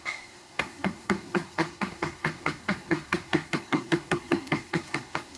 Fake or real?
fake